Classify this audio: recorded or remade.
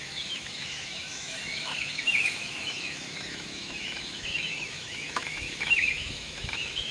remade